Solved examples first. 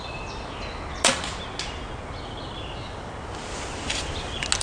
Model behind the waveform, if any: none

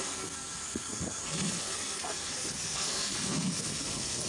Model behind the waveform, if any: codec, SNAC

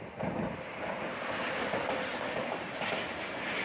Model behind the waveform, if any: none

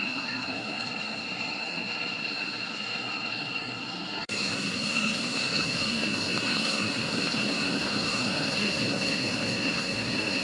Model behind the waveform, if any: codec, SNAC